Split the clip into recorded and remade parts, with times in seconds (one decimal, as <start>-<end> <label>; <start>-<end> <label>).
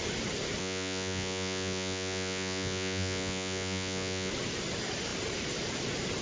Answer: 0.0-0.6 recorded; 0.6-4.3 remade; 4.3-6.2 recorded